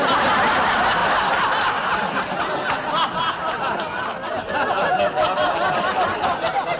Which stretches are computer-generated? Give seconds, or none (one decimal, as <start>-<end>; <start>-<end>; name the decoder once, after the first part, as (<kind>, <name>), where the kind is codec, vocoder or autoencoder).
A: none